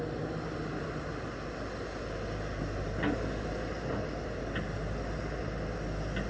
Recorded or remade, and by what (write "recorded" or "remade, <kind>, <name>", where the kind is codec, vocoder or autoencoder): recorded